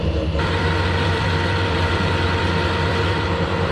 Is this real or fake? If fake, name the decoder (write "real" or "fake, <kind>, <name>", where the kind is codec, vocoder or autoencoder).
fake, vocoder, BigVGAN v2